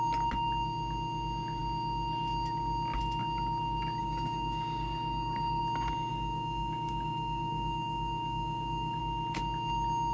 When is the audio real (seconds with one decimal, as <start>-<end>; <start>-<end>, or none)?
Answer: 0.0-4.0; 5.6-6.1; 9.0-10.1